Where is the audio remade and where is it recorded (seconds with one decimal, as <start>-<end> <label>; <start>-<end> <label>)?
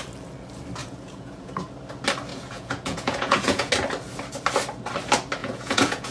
0.0-0.8 recorded; 0.8-1.5 remade; 1.5-2.3 recorded; 2.3-3.7 remade; 3.7-5.4 recorded; 5.4-6.1 remade